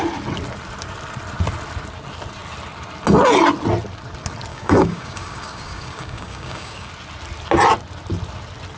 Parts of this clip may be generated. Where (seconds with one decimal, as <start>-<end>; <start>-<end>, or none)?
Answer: 4.5-6.9